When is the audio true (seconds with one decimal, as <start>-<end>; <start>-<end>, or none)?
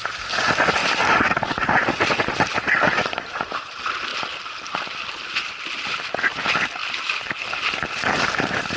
0.0-8.8